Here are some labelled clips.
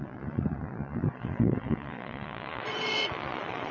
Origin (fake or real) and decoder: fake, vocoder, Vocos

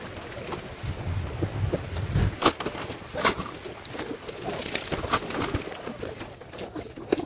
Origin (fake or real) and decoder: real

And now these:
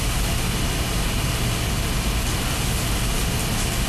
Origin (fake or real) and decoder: real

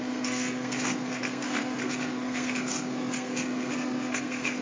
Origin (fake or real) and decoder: fake, codec, SNAC